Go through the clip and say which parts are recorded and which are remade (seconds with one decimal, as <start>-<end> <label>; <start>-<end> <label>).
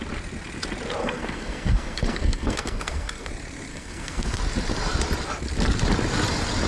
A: 0.0-1.0 recorded; 1.0-3.3 remade; 3.3-3.7 recorded; 3.7-4.4 remade; 4.4-6.7 recorded